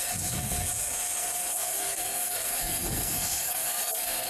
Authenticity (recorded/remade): remade